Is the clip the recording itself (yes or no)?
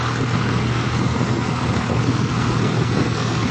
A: no